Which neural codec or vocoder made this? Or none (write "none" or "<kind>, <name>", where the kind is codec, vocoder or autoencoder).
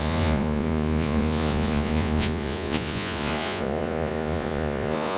vocoder, Vocos